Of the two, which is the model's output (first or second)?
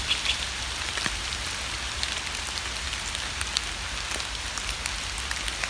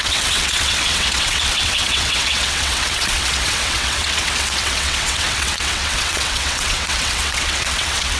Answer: second